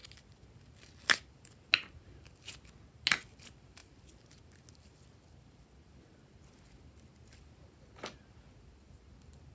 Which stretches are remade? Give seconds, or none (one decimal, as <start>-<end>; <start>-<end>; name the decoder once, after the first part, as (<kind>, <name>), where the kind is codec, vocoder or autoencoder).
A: none